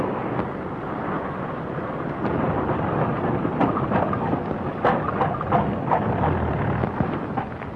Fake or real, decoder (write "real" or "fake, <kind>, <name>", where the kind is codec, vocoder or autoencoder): real